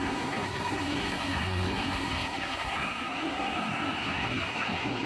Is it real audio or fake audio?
fake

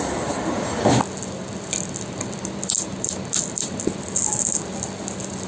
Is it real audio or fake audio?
real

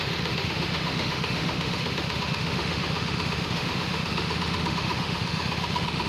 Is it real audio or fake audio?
fake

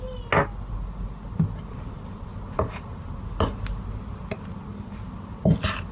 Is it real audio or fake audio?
real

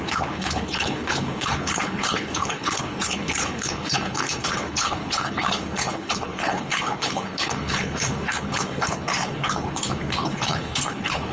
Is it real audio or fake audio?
fake